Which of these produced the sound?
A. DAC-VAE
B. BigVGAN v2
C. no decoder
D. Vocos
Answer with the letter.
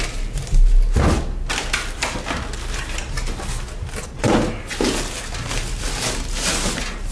C